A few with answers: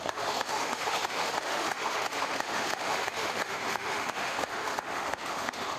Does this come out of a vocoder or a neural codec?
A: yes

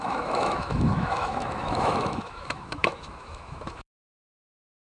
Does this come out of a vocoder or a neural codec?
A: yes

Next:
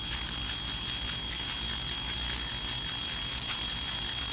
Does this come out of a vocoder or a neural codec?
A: no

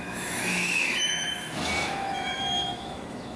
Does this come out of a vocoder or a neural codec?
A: yes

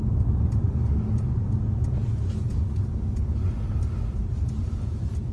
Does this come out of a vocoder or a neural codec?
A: no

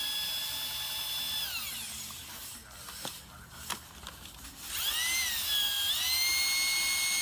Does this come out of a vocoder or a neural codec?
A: no